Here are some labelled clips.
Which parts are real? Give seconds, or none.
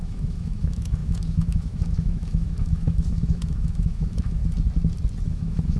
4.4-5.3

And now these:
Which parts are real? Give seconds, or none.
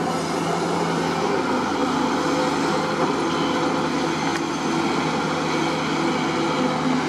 0.0-7.1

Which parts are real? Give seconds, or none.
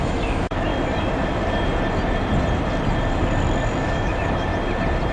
0.7-3.8; 4.5-5.1